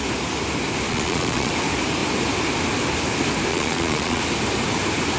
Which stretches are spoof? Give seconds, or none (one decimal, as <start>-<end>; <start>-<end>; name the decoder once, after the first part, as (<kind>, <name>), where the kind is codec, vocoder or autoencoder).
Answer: 0.9-1.5 (vocoder, Vocos); 3.5-4.2